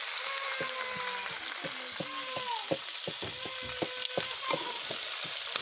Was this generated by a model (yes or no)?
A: no